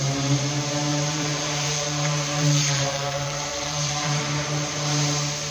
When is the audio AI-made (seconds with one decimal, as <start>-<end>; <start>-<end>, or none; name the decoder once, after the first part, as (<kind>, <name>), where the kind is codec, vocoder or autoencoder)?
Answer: 0.9-4.2 (vocoder, BigVGAN v2)